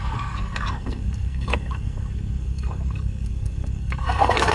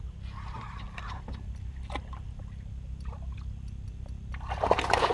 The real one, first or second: second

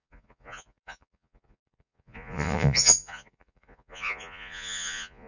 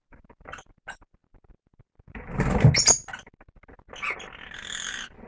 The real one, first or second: second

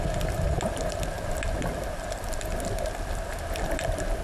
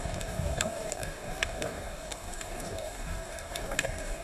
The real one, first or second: first